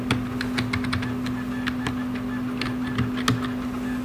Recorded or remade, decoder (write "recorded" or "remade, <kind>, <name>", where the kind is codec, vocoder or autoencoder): recorded